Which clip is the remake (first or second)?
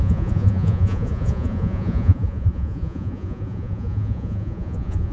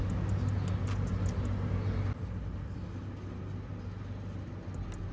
first